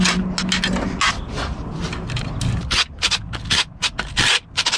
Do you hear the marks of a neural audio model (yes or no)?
no